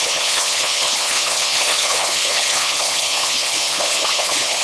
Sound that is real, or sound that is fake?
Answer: fake